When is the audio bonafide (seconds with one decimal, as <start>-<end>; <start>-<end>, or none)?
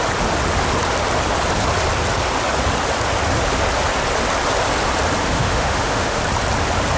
0.0-5.2; 6.2-7.0